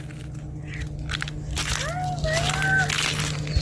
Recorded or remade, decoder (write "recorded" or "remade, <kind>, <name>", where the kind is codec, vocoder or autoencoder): recorded